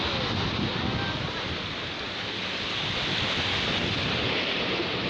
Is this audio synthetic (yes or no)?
no